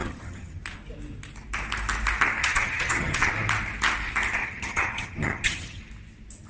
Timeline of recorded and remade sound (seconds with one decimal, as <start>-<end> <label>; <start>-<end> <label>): 0.0-0.6 remade; 0.6-2.4 recorded; 2.4-3.3 remade; 3.3-4.4 recorded; 4.4-5.8 remade; 5.8-6.5 recorded